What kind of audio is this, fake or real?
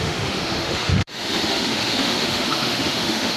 fake